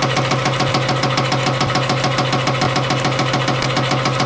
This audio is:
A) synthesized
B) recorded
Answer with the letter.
B